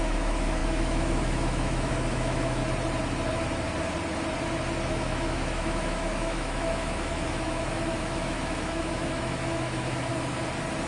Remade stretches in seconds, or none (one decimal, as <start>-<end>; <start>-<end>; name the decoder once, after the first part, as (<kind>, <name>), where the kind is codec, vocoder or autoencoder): 0.0-2.6 (autoencoder, DAC-VAE); 4.9-10.1